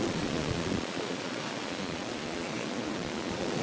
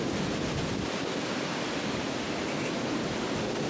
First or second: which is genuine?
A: second